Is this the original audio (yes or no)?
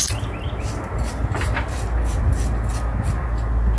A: yes